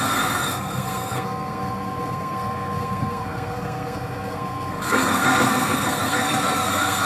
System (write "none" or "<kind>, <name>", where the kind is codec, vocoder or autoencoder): codec, SNAC